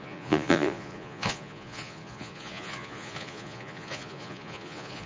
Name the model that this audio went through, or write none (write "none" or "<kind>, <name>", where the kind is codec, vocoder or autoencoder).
vocoder, Vocos